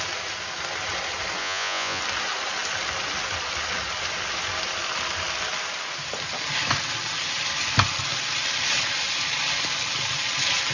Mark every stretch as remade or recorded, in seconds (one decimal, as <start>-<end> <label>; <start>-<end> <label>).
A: 0.0-1.4 recorded; 1.4-2.0 remade; 2.0-10.7 recorded